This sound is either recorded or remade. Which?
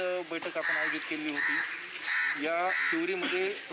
recorded